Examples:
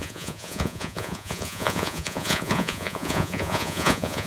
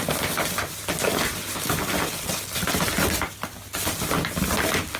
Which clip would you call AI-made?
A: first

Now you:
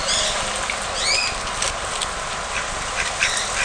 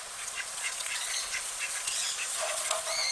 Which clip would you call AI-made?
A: second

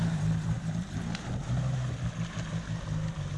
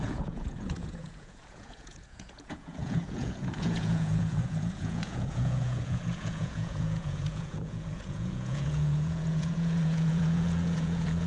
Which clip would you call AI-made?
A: second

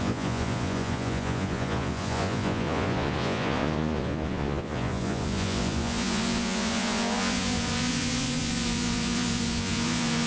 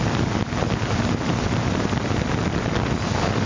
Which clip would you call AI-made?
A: first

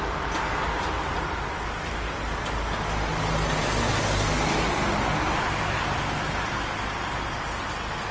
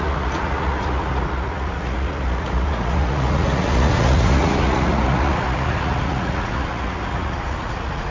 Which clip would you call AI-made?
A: second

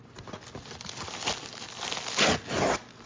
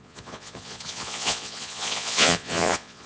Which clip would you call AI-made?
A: second